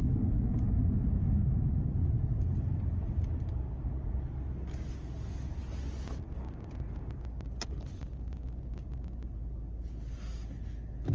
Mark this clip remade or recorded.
recorded